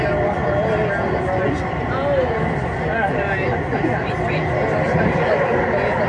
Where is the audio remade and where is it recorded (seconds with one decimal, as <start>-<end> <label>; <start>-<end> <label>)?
0.0-6.1 recorded